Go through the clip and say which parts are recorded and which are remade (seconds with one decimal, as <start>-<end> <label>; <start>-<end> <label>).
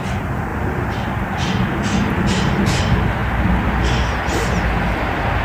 0.0-0.5 recorded; 0.5-2.8 remade; 2.8-5.4 recorded